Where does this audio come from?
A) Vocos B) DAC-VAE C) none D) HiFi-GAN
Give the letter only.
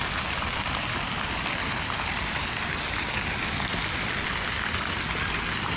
C